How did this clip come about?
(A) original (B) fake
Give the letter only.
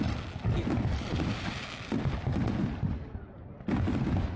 A